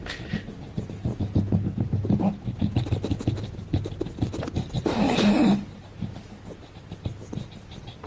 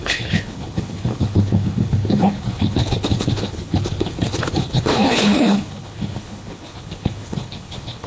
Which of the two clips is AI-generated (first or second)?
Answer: second